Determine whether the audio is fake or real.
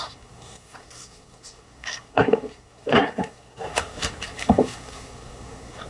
fake